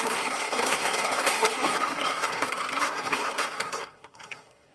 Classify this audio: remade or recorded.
remade